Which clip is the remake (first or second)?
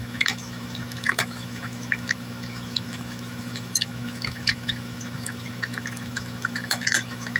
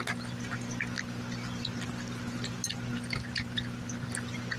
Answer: first